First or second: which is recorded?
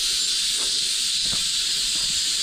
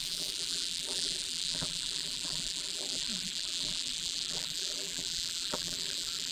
first